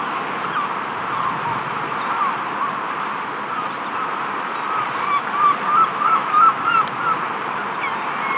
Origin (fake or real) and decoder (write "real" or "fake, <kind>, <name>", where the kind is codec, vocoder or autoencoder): real